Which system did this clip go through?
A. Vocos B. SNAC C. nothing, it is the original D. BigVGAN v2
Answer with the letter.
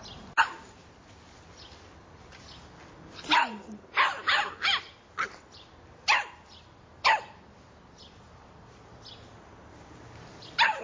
C